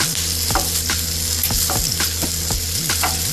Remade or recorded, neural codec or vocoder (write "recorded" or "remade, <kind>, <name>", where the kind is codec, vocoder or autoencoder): recorded